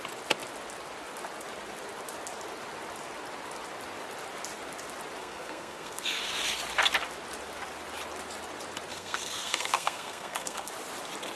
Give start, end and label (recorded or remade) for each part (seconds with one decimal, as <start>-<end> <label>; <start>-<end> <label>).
0.0-5.2 recorded; 5.2-6.2 remade; 6.2-8.9 recorded; 8.9-10.7 remade; 10.7-11.4 recorded